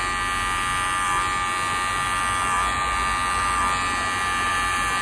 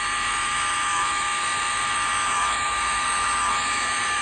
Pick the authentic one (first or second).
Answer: first